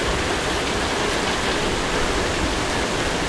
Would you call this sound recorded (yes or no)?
yes